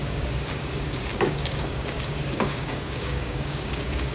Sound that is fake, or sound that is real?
fake